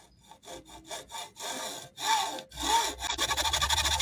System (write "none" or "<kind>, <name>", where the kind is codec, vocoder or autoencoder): none